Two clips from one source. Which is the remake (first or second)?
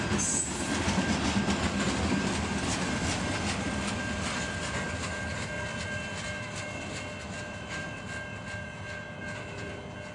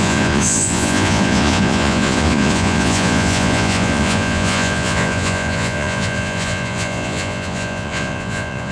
second